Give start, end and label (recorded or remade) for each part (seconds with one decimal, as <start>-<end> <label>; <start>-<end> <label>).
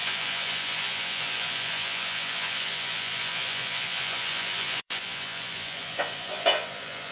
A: 0.0-7.1 remade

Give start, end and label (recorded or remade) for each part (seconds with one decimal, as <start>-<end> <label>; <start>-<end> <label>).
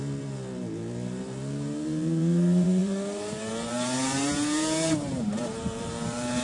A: 0.0-6.4 remade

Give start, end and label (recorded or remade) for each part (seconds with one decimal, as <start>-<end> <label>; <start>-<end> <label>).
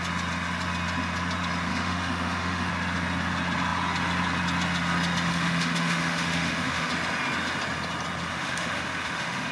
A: 0.0-1.7 recorded; 1.7-2.7 remade; 2.7-5.3 recorded; 5.3-6.9 remade; 6.9-8.3 recorded; 8.3-9.5 remade